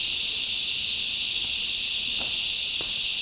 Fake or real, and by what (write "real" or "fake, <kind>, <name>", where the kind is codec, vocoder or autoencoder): real